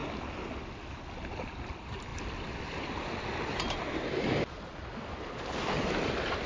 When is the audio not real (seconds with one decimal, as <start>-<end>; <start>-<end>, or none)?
none